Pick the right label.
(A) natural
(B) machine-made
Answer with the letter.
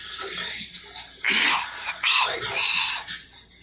A